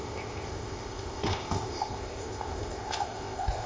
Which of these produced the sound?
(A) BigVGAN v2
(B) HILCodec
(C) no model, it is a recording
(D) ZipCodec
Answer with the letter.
D